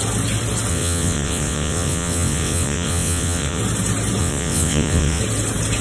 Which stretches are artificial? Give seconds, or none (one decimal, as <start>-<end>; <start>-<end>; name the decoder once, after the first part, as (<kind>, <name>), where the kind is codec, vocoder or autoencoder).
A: 0.7-3.6 (vocoder, WaveNeXt); 4.2-5.2